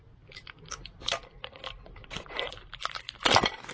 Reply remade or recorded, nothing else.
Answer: recorded